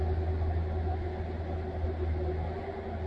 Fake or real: real